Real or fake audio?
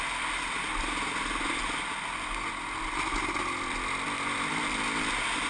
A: real